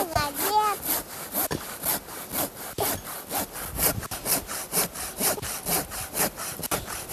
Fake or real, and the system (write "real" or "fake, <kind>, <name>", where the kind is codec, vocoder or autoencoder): real